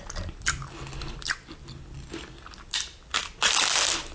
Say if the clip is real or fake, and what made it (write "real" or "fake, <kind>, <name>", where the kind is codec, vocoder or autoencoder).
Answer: real